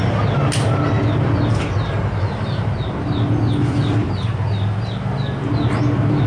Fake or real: real